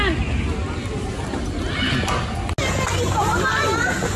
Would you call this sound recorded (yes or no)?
yes